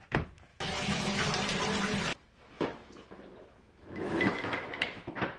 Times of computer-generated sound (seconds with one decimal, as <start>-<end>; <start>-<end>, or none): 0.5-1.3; 2.1-5.4